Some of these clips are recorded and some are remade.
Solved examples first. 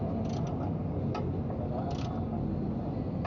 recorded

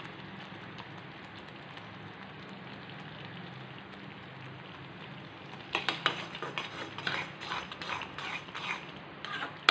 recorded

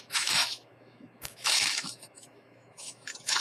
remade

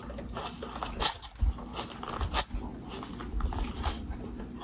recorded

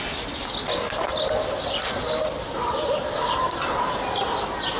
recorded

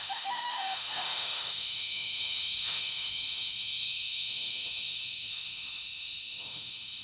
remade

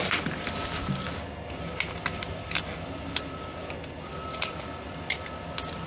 recorded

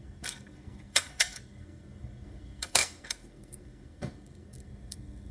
remade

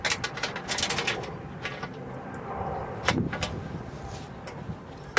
recorded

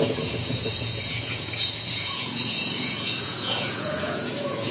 remade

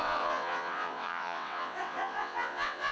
remade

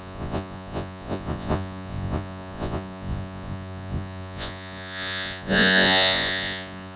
remade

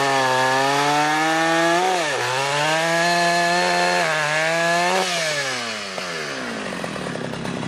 recorded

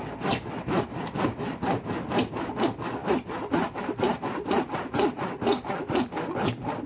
recorded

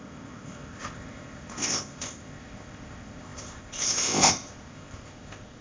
remade